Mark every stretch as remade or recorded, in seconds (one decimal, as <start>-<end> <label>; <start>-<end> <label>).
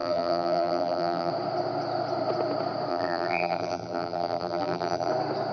0.0-1.3 remade; 1.3-2.9 recorded; 2.9-5.1 remade; 5.1-5.5 recorded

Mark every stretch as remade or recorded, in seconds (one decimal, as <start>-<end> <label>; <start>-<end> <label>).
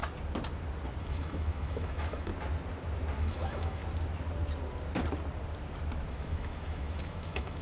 0.0-1.0 recorded; 1.0-2.3 remade; 2.3-3.2 recorded; 3.2-3.8 remade; 3.8-6.1 recorded; 6.1-7.6 remade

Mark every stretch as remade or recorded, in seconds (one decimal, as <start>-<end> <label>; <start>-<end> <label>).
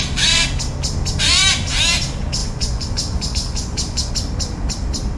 0.0-2.4 recorded; 2.4-4.1 remade; 4.1-5.2 recorded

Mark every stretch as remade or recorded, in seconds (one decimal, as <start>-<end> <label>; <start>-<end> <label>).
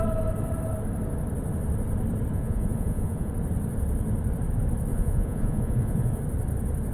0.0-2.3 recorded; 2.3-3.3 remade; 3.3-4.9 recorded; 4.9-6.2 remade; 6.2-6.9 recorded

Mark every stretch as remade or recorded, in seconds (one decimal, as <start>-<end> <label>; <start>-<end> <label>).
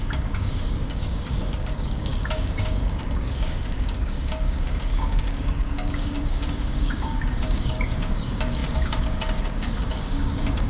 0.0-10.7 remade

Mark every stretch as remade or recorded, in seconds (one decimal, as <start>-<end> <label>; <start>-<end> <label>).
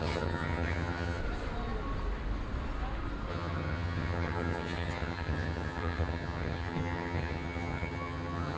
0.0-1.2 remade; 1.2-3.3 recorded; 3.3-8.6 remade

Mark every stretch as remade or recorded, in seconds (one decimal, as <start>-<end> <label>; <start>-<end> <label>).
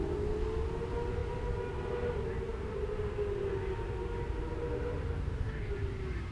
0.0-5.1 recorded; 5.1-5.7 remade; 5.7-6.3 recorded